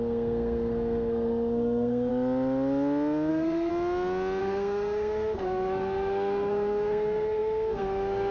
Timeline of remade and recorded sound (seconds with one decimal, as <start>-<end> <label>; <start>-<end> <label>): 0.0-2.1 remade; 2.1-3.3 recorded; 3.3-3.7 remade; 3.7-4.4 recorded; 4.4-8.3 remade